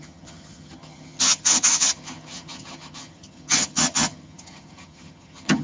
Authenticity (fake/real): fake